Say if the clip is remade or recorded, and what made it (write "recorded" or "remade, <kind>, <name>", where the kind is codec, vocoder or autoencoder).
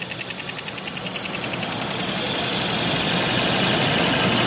recorded